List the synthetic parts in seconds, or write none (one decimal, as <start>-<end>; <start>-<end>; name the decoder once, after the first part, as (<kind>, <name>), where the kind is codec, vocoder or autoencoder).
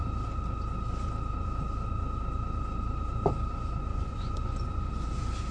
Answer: 3.9-4.9 (vocoder, Vocos)